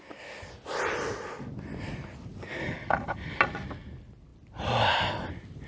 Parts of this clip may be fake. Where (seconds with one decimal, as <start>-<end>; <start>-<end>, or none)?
2.6-3.4